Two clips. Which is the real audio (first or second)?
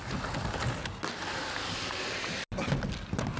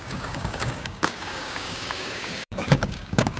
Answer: first